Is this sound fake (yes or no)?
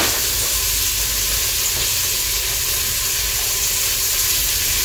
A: no